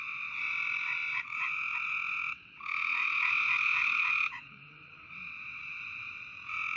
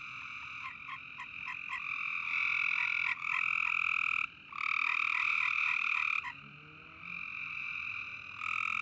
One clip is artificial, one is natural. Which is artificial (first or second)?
first